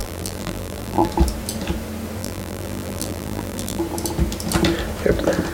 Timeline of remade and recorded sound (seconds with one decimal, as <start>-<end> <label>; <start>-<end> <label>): 0.0-1.1 remade; 1.1-2.2 recorded; 2.2-3.8 remade; 3.8-5.5 recorded